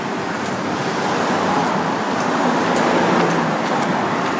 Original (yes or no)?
yes